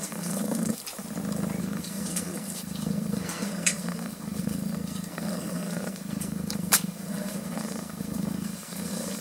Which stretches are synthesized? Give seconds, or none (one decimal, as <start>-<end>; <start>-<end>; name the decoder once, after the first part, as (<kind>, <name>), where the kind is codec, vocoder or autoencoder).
0.0-0.8 (codec, SNAC); 1.6-9.2